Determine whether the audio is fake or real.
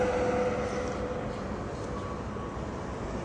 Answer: real